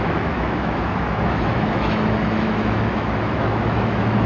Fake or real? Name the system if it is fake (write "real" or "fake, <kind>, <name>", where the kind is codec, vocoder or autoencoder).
fake, autoencoder, DAC-VAE